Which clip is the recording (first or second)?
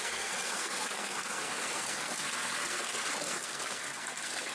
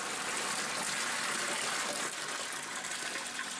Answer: second